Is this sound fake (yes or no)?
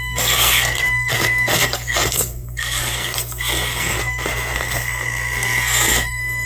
yes